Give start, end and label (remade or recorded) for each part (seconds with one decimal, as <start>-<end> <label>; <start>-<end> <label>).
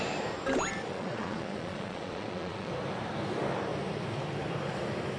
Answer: 0.0-0.9 recorded; 0.9-2.7 remade; 2.7-5.2 recorded